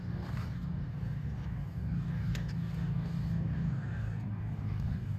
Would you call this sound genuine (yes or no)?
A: no